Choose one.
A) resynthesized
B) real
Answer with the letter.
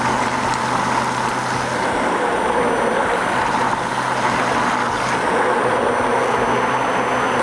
B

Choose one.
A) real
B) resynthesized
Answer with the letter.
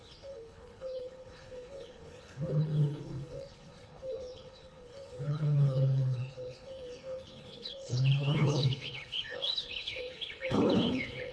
B